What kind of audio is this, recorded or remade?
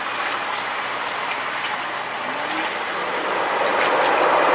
recorded